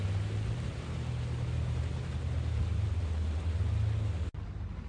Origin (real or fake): real